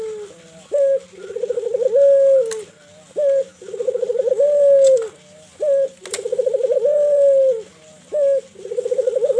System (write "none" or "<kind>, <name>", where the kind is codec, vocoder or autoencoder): none